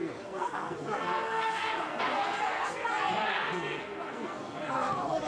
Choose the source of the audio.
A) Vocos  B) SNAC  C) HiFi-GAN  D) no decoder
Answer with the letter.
B